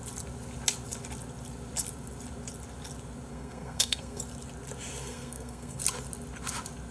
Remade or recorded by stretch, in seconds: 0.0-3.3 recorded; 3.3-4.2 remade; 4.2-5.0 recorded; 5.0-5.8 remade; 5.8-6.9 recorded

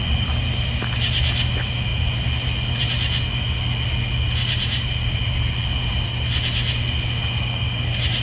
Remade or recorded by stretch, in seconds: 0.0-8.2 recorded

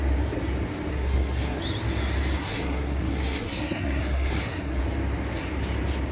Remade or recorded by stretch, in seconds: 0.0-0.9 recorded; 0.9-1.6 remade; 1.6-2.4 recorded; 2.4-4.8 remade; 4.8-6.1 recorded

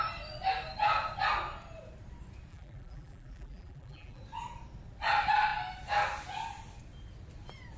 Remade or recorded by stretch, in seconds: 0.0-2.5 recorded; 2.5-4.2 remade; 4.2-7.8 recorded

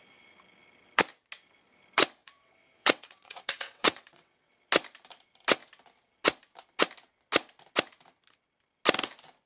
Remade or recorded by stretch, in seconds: 0.0-2.2 recorded; 2.2-4.5 remade; 4.5-9.5 recorded

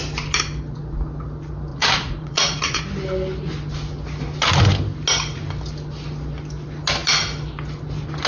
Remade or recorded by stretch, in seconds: 0.0-1.7 recorded; 1.7-2.8 remade; 2.8-8.3 recorded

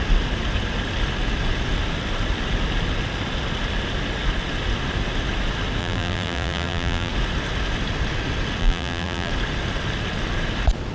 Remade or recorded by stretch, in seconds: 0.0-5.8 recorded; 5.8-7.1 remade; 7.1-8.6 recorded; 8.6-9.3 remade; 9.3-10.9 recorded